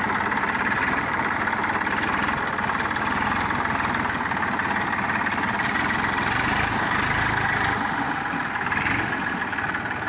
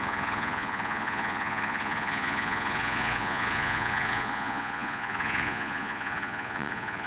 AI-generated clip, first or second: second